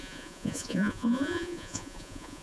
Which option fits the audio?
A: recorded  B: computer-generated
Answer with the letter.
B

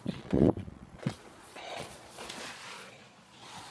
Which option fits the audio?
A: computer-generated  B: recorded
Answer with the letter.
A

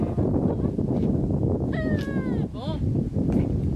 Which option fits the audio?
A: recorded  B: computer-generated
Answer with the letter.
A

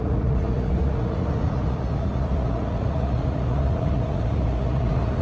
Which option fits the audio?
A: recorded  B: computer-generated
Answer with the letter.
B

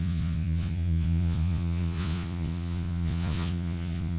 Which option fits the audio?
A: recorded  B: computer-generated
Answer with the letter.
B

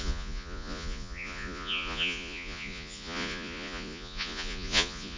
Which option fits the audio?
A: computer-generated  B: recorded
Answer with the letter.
A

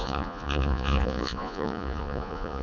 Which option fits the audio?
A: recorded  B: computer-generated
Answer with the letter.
B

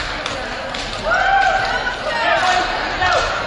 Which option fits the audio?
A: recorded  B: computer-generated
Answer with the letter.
A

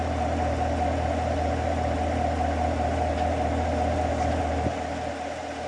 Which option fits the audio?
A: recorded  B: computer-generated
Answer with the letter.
A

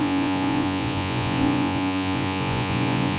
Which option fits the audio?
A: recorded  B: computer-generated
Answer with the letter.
B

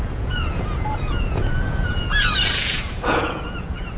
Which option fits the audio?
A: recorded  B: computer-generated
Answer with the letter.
B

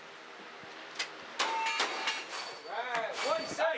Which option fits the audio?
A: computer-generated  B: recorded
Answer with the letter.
B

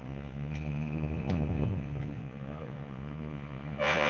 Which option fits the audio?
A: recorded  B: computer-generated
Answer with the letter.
B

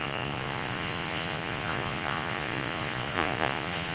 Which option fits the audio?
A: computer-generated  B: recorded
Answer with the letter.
A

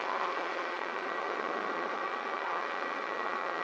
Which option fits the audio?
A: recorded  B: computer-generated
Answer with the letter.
B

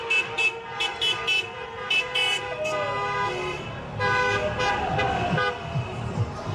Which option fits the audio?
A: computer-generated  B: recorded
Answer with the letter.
B